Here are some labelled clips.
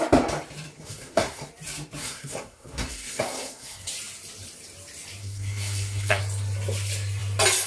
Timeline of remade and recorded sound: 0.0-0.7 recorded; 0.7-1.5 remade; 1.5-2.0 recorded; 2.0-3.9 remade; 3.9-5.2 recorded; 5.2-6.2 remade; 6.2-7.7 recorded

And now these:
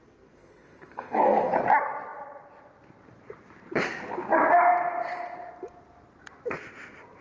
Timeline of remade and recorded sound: 0.0-1.5 remade; 1.5-7.2 recorded

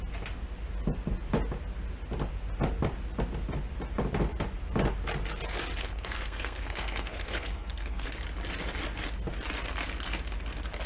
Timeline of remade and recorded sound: 0.0-5.8 recorded; 5.8-8.1 remade; 8.1-10.9 recorded